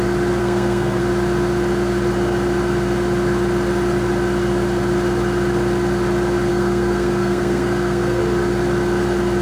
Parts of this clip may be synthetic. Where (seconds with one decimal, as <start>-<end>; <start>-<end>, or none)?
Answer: 0.4-1.0; 6.5-8.2